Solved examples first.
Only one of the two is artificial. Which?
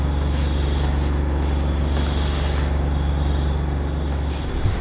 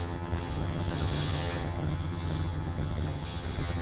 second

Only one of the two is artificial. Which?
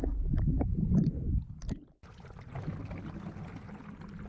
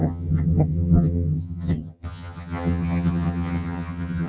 second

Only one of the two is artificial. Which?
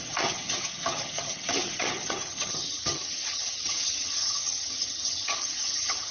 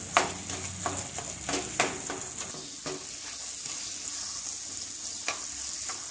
first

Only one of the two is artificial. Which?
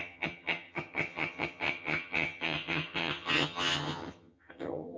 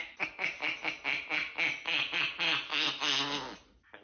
first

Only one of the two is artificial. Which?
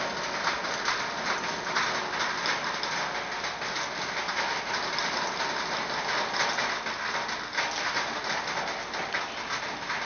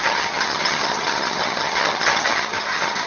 second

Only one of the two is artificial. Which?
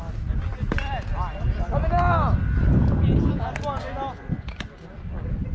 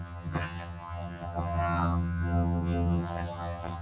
second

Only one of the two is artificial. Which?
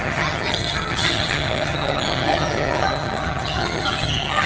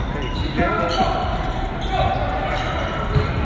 first